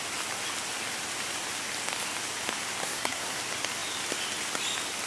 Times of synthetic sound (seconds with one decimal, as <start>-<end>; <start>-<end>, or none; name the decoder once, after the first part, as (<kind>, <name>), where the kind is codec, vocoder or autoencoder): 2.8-3.4 (codec, SNAC)